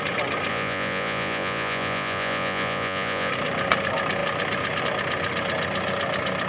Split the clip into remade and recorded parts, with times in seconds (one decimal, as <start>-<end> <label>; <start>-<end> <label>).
0.0-0.5 recorded; 0.5-3.3 remade; 3.3-6.5 recorded